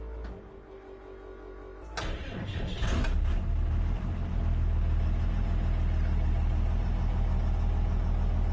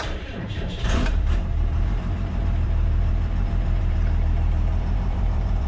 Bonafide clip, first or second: first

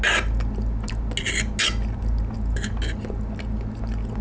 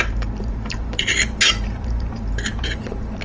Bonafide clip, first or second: first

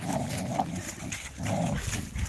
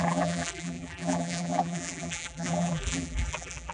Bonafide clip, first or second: first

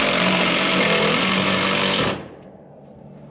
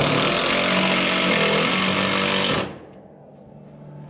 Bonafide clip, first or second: second